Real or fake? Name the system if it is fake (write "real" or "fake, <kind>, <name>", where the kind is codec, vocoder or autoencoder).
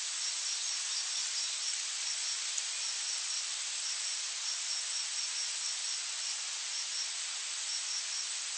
real